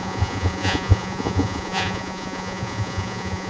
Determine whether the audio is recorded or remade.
remade